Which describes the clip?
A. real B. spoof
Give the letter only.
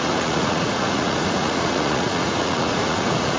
B